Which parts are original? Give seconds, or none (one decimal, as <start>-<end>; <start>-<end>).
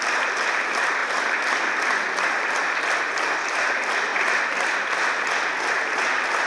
0.0-6.5